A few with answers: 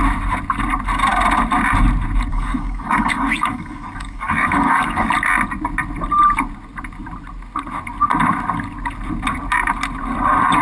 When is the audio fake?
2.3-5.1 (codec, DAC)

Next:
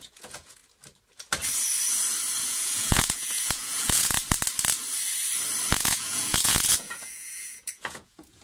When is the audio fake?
0.0-0.6 (vocoder, Vocos); 2.4-4.2; 5.7-8.4